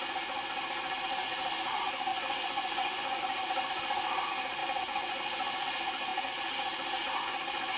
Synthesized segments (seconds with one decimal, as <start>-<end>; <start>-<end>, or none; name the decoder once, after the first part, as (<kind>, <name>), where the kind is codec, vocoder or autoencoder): 2.1-3.2 (vocoder, Vocos); 4.6-5.2